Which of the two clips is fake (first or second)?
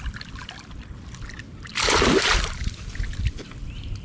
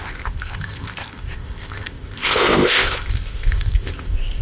second